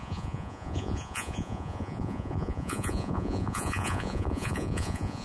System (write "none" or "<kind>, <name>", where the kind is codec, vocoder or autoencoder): vocoder, Vocos